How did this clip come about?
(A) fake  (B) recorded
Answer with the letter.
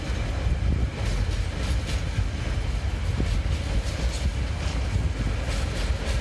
B